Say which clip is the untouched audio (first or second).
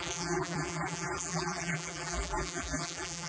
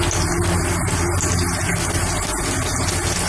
second